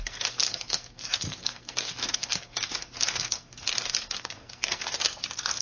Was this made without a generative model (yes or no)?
no